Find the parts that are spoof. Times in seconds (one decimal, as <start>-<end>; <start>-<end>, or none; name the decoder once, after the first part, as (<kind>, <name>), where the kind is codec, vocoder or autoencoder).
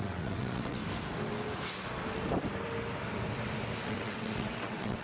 0.0-0.8 (vocoder, WaveNeXt); 3.8-5.0